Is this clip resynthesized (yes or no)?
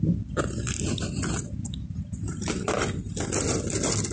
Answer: no